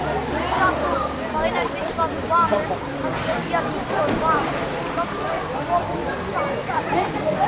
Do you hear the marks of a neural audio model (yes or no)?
no